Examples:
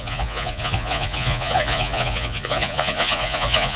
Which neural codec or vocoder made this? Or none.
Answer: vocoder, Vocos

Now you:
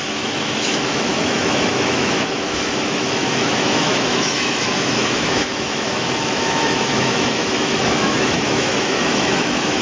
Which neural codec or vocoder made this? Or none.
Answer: autoencoder, DAC-VAE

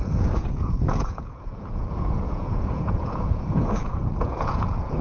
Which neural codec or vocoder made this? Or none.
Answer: vocoder, Vocos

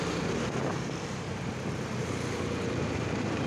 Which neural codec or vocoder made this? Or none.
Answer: none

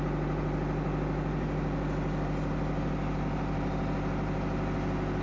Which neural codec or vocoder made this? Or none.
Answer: none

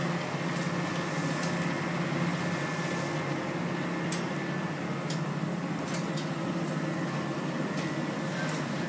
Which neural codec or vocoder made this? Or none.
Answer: none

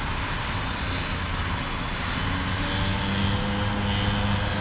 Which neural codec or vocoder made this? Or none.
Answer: none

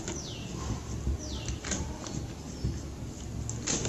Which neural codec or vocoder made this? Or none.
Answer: none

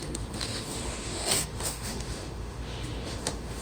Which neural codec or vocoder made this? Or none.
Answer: autoencoder, DAC-VAE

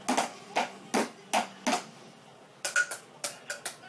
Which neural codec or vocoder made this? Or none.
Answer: none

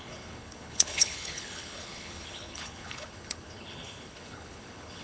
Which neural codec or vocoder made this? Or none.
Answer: codec, HILCodec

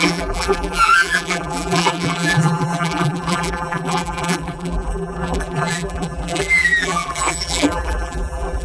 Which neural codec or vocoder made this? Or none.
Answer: vocoder, BigVGAN v2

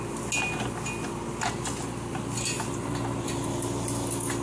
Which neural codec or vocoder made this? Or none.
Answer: none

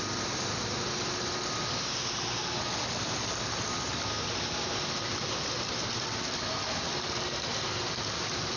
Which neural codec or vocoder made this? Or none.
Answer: none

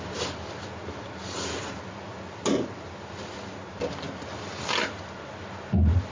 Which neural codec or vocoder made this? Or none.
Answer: none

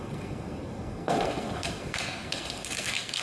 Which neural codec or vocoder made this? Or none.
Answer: codec, SNAC